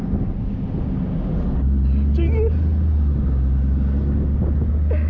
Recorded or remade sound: recorded